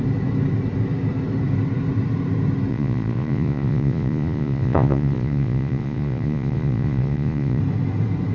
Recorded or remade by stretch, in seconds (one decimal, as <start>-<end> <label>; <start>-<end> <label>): 0.0-2.7 recorded; 2.7-7.6 remade; 7.6-8.3 recorded